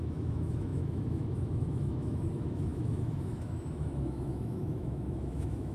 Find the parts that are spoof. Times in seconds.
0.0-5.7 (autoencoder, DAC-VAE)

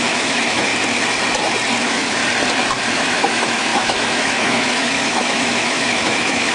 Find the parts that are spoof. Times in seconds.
0.0-0.7 (autoencoder, DAC-VAE); 1.8-2.2; 2.9-6.5